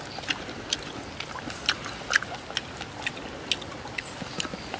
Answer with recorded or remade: recorded